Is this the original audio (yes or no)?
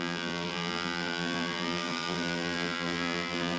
no